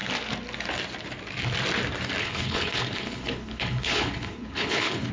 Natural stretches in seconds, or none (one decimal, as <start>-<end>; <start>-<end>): 0.0-2.2